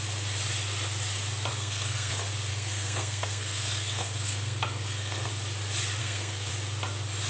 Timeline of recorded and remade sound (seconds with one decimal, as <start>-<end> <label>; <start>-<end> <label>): 0.0-1.5 recorded; 1.5-2.1 remade; 2.1-2.5 recorded; 2.5-5.3 remade; 5.3-6.0 recorded; 6.0-6.5 remade; 6.5-7.3 recorded